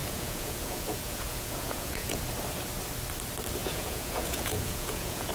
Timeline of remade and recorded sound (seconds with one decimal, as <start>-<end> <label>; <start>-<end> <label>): 0.0-2.2 remade; 2.2-3.6 recorded; 3.6-5.3 remade